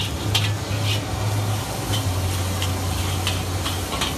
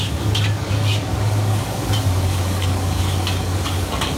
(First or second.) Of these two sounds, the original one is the first